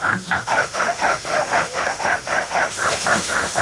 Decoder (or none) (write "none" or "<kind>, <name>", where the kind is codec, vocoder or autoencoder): autoencoder, DAC-VAE